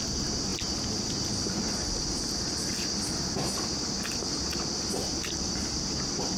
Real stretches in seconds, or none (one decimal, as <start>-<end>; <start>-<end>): 0.0-6.4